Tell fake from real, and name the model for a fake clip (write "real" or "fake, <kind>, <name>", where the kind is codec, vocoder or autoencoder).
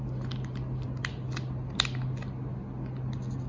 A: real